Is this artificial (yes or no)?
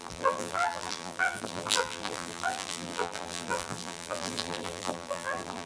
yes